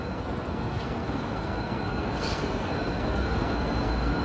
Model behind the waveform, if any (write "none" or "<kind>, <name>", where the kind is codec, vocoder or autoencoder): codec, SNAC